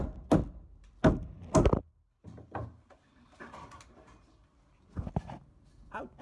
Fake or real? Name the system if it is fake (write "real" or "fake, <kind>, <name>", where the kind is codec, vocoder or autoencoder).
real